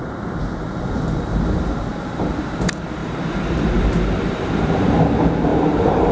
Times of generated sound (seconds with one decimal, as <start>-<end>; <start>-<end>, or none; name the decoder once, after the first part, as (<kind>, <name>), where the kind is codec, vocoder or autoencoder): 3.0-5.0 (vocoder, BigVGAN v2); 5.5-6.1